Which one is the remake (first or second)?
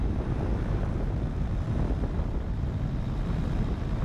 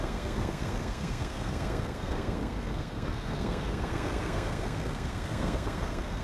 second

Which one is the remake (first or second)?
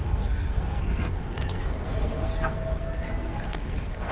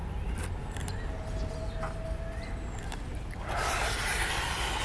first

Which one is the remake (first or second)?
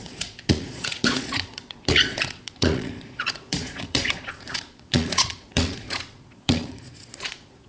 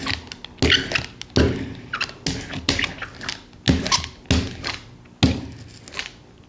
first